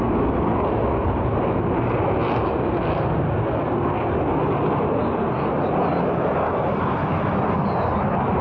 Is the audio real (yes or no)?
yes